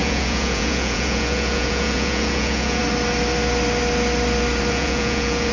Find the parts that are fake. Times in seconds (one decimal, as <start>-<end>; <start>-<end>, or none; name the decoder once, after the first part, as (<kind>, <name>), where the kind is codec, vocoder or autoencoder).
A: 0.0-2.8 (vocoder, Vocos); 4.7-5.5